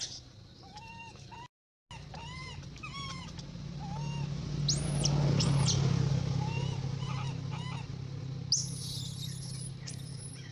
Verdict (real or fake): real